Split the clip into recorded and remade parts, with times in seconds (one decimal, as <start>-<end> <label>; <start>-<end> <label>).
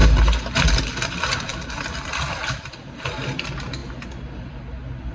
0.0-5.1 recorded